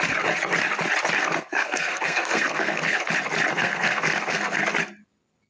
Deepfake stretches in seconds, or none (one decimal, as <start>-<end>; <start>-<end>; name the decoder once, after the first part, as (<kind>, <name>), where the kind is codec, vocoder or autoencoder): 1.2-3.1 (codec, SNAC); 3.5-4.6